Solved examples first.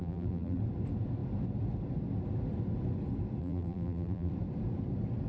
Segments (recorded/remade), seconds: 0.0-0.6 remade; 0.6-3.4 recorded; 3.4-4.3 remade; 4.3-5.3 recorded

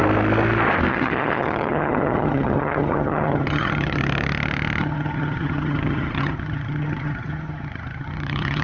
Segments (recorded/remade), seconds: 0.0-0.9 recorded; 0.9-4.0 remade; 4.0-4.8 recorded; 4.8-8.6 remade

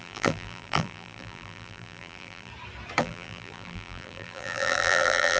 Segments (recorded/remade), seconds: 0.0-2.5 remade; 2.5-3.0 recorded; 3.0-5.4 remade

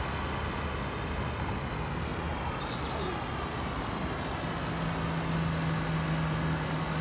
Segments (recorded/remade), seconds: 0.0-7.0 recorded

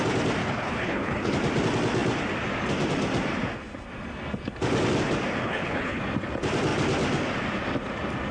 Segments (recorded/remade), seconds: 0.0-0.4 recorded; 0.4-1.3 remade; 1.3-5.4 recorded; 5.4-6.0 remade; 6.0-8.3 recorded

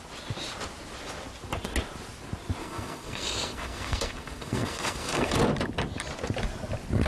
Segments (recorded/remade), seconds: 0.0-2.6 recorded; 2.6-5.4 remade; 5.4-7.1 recorded

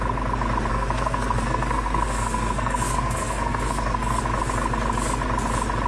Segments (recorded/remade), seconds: 0.0-0.7 recorded; 0.7-4.2 remade; 4.2-5.9 recorded